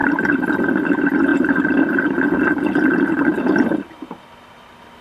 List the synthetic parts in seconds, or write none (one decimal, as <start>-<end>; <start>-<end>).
0.0-0.7; 1.3-4.3